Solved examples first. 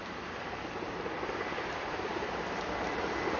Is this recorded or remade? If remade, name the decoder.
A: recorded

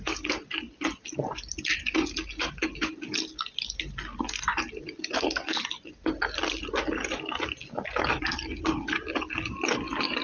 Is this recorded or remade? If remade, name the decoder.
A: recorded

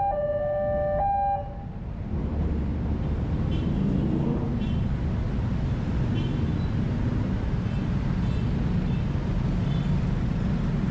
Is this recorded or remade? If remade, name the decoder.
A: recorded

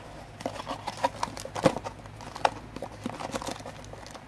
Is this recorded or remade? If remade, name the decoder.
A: recorded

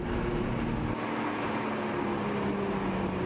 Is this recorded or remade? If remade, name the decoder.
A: recorded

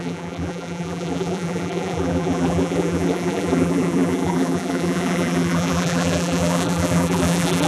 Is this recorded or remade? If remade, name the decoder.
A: remade, vocoder, BigVGAN v2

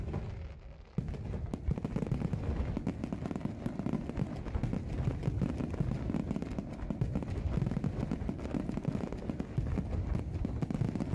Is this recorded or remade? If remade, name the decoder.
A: recorded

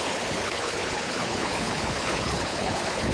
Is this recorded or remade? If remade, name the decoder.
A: remade, codec, HILCodec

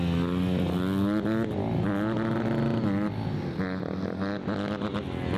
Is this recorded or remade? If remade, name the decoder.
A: recorded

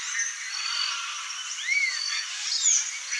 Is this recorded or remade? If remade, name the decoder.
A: recorded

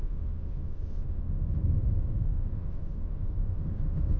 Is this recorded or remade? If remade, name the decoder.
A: remade, autoencoder, DAC-VAE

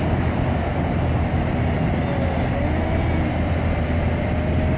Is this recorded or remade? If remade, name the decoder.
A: recorded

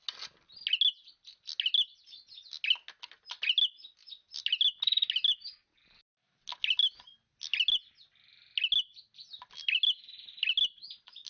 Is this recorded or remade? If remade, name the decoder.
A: recorded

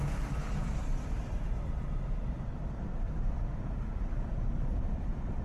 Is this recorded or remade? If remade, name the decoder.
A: remade, vocoder, BigVGAN v2